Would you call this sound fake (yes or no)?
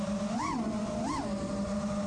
no